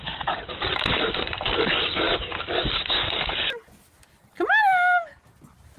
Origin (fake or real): real